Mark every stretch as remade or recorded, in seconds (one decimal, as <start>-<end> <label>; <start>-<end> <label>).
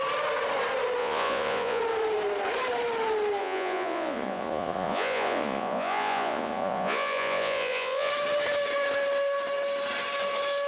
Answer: 0.0-1.0 recorded; 1.0-1.8 remade; 1.8-3.4 recorded; 3.4-8.1 remade; 8.1-10.7 recorded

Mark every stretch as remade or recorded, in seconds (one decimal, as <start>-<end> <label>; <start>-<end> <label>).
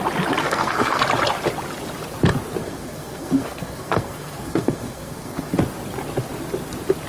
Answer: 0.0-0.4 recorded; 0.4-1.0 remade; 1.0-2.6 recorded; 2.6-5.5 remade; 5.5-7.1 recorded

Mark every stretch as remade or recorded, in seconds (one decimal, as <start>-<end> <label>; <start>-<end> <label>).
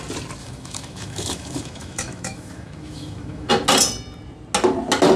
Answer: 0.0-0.4 recorded; 0.4-3.5 remade; 3.5-5.2 recorded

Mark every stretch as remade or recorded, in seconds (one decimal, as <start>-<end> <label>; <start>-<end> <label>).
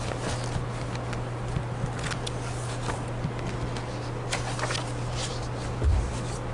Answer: 0.0-6.5 recorded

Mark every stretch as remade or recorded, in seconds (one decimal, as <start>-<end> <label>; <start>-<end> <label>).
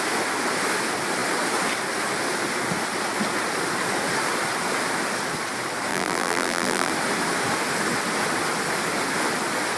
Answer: 0.0-5.9 recorded; 5.9-6.9 remade; 6.9-9.8 recorded